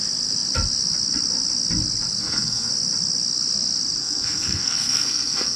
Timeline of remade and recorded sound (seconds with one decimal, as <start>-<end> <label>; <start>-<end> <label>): 0.0-2.2 recorded; 2.2-2.7 remade; 2.7-4.0 recorded; 4.0-5.6 remade